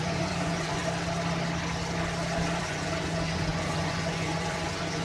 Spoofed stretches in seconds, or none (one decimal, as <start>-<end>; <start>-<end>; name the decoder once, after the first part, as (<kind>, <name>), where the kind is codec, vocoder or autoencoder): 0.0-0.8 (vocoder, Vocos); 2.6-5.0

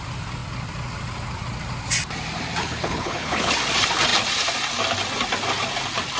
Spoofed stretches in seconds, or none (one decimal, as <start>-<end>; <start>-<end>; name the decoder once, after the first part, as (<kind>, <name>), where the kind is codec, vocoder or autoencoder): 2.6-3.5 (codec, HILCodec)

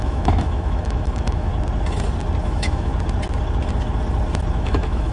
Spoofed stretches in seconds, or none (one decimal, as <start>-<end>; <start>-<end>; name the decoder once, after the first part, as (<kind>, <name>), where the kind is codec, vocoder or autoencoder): 0.0-1.5 (autoencoder, DAC-VAE); 2.4-2.9; 4.6-5.1

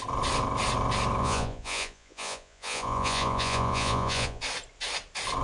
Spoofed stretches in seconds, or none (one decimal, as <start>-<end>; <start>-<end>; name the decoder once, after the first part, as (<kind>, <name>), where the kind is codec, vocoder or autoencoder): 1.2-4.4 (vocoder, Vocos)

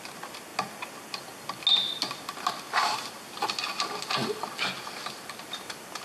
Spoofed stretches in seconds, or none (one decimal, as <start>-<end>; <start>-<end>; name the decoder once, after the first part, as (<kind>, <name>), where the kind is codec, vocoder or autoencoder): none

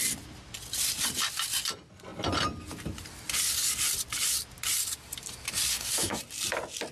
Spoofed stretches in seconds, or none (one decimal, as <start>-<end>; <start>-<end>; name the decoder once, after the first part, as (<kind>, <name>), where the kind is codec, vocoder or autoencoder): 5.7-6.2 (codec, DAC)